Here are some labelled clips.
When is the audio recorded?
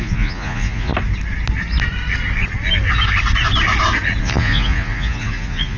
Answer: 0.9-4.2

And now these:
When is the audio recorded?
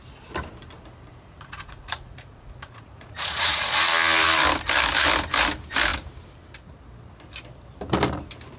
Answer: 0.0-1.1; 3.7-8.6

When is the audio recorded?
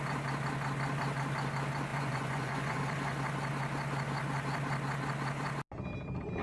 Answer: 0.0-1.9; 2.8-6.4